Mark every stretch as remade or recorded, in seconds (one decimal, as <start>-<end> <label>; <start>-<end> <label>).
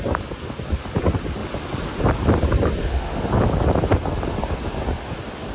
0.0-2.8 recorded; 2.8-3.3 remade; 3.3-5.5 recorded